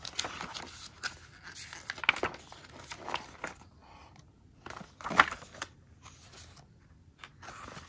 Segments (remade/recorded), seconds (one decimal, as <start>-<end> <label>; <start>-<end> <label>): 0.0-7.9 recorded